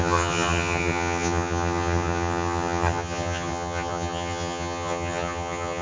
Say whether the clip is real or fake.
fake